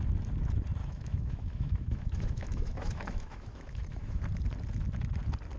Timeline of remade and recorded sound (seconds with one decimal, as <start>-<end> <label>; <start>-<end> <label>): 0.0-0.8 recorded; 0.8-4.2 remade; 4.2-5.6 recorded